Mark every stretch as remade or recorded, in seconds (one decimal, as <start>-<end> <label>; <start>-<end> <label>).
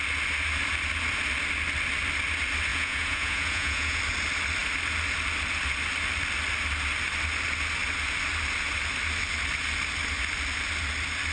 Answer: 0.0-2.7 recorded; 2.7-4.0 remade; 4.0-11.3 recorded